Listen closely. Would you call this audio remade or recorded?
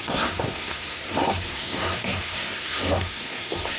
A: remade